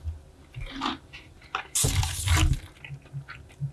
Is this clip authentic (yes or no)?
yes